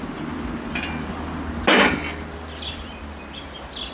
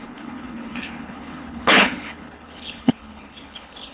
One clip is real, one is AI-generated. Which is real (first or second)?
first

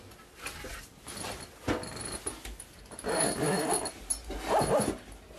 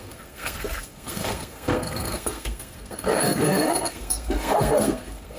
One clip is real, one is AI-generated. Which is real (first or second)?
first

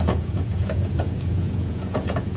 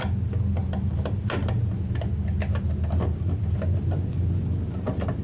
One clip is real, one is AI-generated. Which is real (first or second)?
second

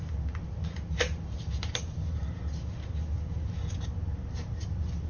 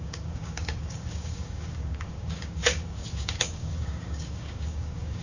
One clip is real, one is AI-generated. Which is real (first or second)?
first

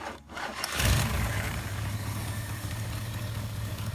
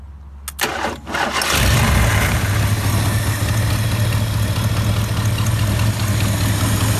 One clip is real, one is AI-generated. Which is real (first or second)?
second